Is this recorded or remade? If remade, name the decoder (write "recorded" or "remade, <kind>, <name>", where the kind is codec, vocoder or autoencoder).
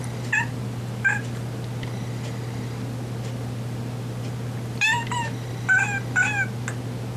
recorded